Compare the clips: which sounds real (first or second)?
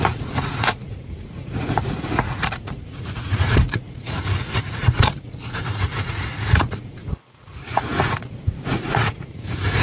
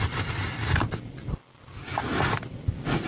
second